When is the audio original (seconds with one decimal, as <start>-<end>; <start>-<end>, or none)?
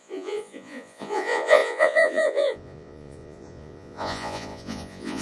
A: none